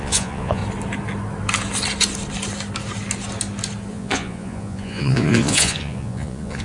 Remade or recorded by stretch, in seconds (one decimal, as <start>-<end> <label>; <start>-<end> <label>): 0.0-0.6 remade; 0.6-3.9 recorded; 3.9-6.6 remade